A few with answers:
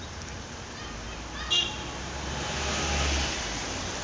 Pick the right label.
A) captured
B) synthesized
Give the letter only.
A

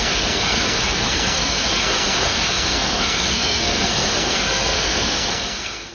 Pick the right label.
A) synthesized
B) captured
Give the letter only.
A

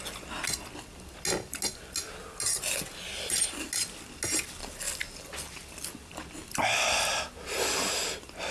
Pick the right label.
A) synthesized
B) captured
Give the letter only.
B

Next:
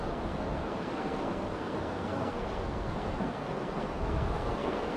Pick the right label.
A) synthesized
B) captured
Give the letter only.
A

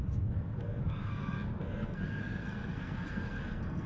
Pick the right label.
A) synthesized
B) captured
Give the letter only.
A